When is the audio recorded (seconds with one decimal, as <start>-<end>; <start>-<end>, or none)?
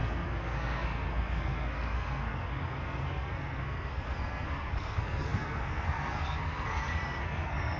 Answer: none